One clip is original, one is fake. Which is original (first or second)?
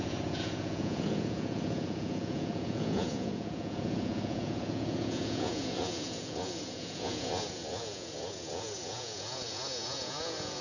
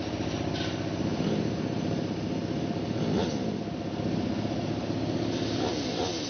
second